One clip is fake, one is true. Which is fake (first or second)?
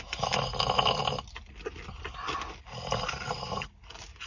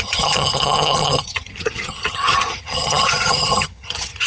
second